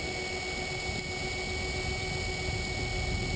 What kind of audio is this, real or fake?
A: real